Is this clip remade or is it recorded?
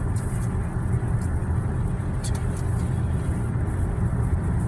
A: recorded